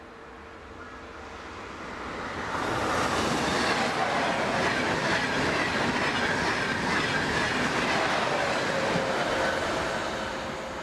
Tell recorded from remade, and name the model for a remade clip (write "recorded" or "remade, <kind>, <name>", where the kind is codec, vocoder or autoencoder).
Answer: recorded